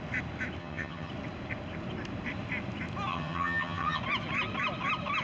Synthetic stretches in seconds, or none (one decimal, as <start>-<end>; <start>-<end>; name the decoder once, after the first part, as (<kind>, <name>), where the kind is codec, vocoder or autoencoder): 0.6-1.1 (vocoder, HiFi-GAN); 3.1-4.0